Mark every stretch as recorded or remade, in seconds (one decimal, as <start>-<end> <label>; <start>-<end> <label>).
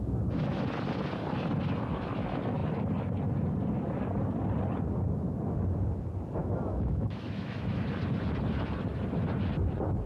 0.0-6.4 recorded; 6.4-7.8 remade; 7.8-10.1 recorded